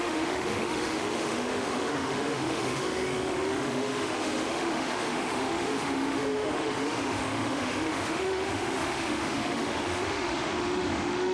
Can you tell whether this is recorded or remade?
remade